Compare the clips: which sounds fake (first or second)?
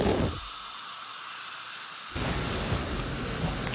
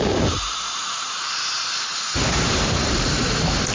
second